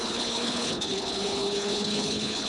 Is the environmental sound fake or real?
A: fake